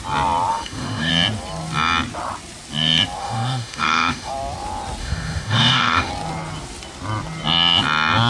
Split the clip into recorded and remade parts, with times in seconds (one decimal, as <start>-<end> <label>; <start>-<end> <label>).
0.0-0.5 recorded; 0.5-1.1 remade; 1.1-3.2 recorded; 3.2-4.3 remade; 4.3-5.0 recorded; 5.0-6.1 remade; 6.1-8.3 recorded